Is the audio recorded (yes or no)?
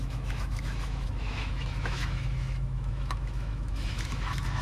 no